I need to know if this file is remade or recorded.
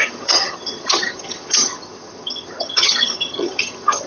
remade